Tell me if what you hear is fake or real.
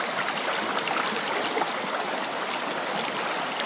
real